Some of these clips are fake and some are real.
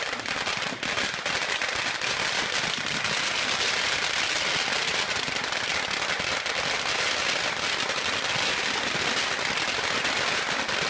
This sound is real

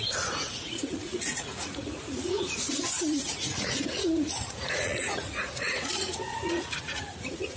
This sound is fake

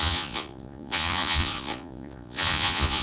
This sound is fake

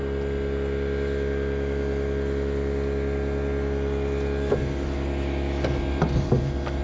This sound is real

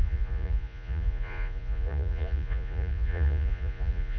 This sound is fake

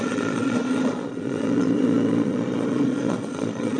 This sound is fake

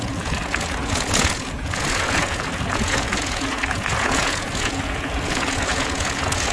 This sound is fake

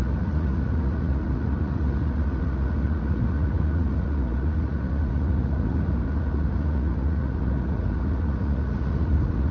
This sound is fake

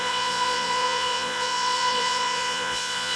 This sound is fake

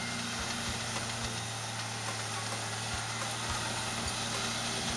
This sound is real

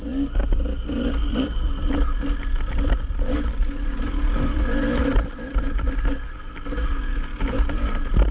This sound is real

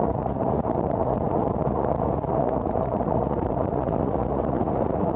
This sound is fake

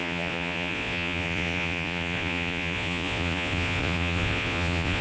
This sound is fake